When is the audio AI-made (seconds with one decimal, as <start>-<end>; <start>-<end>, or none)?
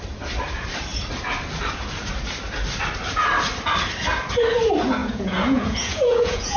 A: 5.0-6.6